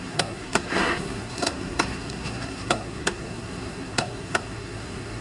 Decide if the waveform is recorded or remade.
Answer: remade